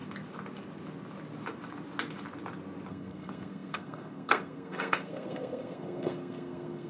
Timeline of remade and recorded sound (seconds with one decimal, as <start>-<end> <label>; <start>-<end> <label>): 0.0-2.9 recorded; 2.9-6.9 remade

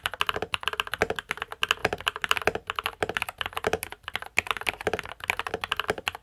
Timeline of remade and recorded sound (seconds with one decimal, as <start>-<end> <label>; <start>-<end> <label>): 0.0-1.8 recorded; 1.8-5.5 remade; 5.5-6.2 recorded

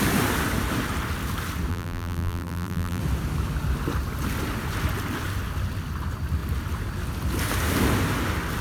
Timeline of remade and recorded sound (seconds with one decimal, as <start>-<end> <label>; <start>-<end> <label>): 0.0-1.7 recorded; 1.7-3.0 remade; 3.0-8.6 recorded

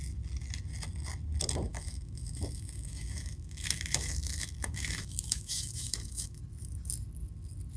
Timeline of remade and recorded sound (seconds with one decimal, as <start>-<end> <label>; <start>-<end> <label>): 0.0-1.7 recorded; 1.7-6.4 remade; 6.4-7.8 recorded

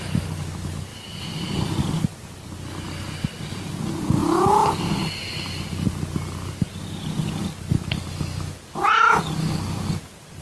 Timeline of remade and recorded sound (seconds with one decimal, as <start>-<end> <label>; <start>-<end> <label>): 0.0-0.9 recorded; 0.9-1.5 remade; 1.5-10.4 recorded

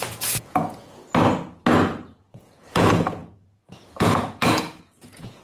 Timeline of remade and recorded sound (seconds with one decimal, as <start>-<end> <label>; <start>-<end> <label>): 0.0-1.0 remade; 1.0-2.1 recorded; 2.1-5.4 remade